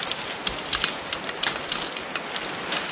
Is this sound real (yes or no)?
yes